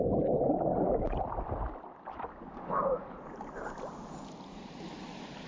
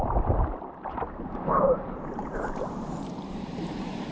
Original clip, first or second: first